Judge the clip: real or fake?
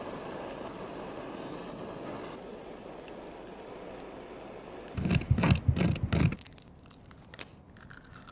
real